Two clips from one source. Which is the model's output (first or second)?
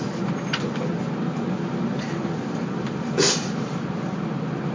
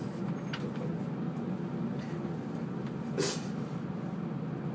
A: first